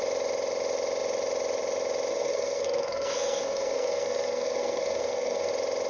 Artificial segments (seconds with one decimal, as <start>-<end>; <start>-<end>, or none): 2.1-5.5

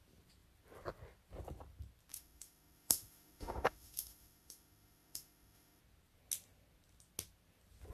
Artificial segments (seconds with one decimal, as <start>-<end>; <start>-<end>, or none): 2.1-5.8

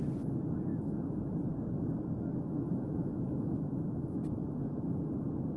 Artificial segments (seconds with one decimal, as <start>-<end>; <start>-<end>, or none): 0.7-1.3; 2.4-4.2

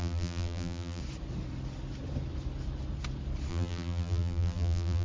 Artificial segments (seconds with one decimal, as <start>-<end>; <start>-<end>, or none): 0.0-1.0; 3.5-5.0

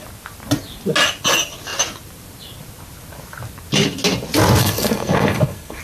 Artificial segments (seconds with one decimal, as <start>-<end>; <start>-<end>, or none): 4.6-5.8

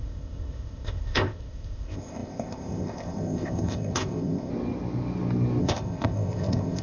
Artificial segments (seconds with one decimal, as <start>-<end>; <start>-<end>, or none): 0.0-4.5; 5.6-6.8